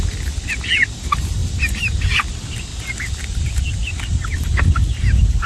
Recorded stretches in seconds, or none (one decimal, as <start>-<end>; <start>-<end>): 0.0-5.5